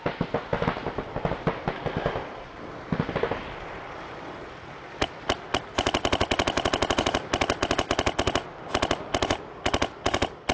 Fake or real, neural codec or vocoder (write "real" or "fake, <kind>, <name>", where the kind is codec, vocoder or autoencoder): real